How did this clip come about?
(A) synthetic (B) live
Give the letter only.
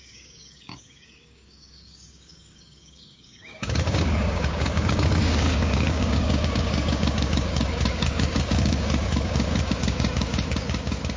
A